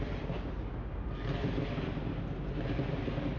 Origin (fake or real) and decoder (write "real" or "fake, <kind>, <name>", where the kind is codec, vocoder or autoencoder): real